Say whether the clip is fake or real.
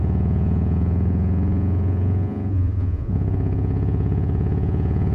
fake